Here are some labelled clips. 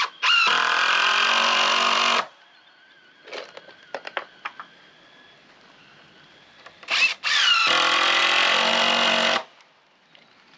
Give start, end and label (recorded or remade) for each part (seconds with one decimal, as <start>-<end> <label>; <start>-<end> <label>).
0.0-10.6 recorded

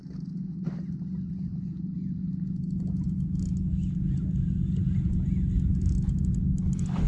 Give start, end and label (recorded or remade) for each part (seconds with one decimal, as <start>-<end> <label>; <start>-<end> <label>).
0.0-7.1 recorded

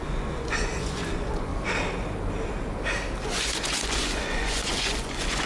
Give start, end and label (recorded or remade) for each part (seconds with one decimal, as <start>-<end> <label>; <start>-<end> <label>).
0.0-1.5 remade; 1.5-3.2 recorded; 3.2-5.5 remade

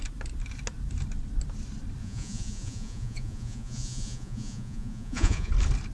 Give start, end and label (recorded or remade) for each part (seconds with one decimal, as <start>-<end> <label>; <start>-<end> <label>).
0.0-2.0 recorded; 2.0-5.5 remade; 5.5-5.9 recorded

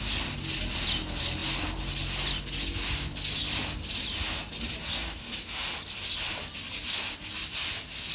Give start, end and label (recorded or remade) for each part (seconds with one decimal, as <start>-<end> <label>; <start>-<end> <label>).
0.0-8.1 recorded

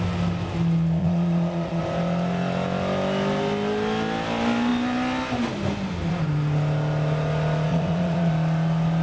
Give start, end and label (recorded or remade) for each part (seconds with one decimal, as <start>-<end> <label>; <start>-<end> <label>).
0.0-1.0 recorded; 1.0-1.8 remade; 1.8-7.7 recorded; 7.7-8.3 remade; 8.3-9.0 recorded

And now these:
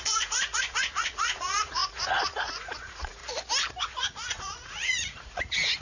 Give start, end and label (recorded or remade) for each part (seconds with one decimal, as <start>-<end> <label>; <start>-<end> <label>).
0.0-3.2 remade; 3.2-3.8 recorded; 3.8-5.8 remade

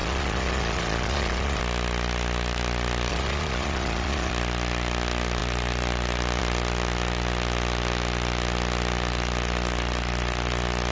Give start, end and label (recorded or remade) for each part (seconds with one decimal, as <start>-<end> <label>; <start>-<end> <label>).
0.0-1.6 remade; 1.6-3.1 recorded; 3.1-4.3 remade; 4.3-10.9 recorded